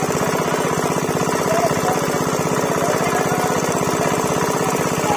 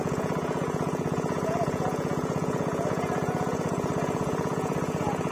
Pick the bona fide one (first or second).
first